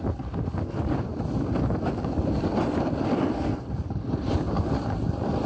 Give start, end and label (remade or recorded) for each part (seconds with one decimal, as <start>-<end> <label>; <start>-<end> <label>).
0.0-5.5 recorded